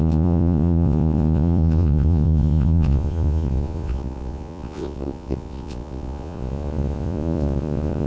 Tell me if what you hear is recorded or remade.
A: remade